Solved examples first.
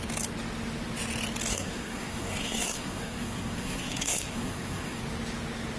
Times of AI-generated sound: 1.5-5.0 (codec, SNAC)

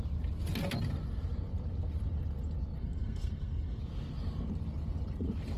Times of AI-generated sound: 2.8-3.8 (codec, SNAC)

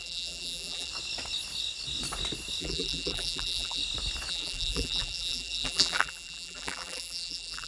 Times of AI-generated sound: 0.0-0.9 (vocoder, BigVGAN v2); 2.6-3.8; 4.3-7.7

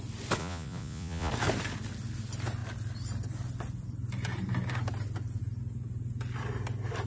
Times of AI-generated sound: 0.4-1.3 (vocoder, Vocos)

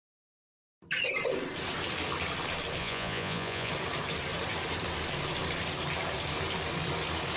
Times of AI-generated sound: 2.8-3.7 (vocoder, Vocos)